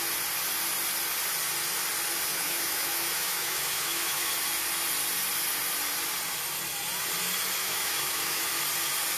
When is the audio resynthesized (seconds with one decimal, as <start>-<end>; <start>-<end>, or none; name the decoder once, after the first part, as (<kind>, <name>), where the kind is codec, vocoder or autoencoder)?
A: 2.3-4.3 (autoencoder, DAC-VAE); 7.6-8.5